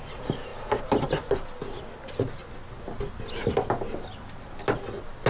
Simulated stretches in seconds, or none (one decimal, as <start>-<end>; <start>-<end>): none